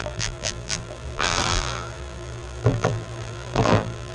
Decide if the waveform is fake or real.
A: fake